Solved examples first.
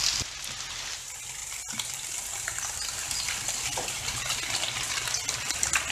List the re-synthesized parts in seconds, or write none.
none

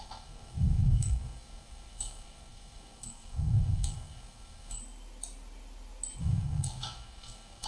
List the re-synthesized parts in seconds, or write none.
0.0-4.8 (codec, SNAC); 6.2-7.7